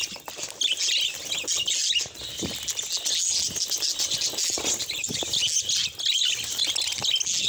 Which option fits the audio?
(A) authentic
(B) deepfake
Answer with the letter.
A